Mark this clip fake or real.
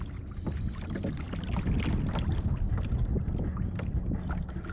real